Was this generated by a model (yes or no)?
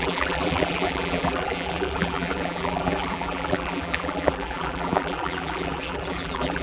yes